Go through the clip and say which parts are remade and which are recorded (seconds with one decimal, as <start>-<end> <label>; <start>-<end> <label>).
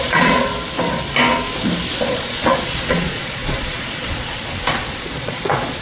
0.0-0.5 remade; 0.5-2.0 recorded; 2.0-5.8 remade